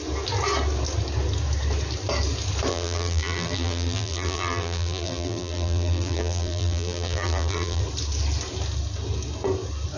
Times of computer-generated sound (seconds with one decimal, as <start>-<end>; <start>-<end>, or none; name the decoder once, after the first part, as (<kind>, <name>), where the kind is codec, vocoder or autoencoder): 2.7-7.8 (vocoder, BigVGAN v2)